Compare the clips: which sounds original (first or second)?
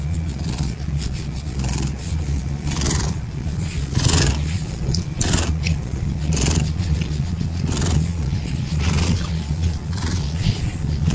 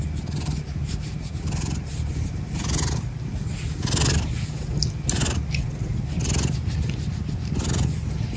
second